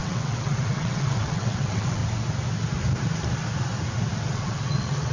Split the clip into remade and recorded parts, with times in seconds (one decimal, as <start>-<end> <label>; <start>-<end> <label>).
0.0-2.0 remade; 2.0-4.1 recorded; 4.1-5.1 remade